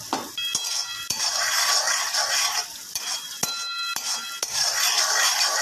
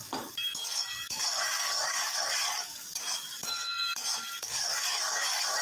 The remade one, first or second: second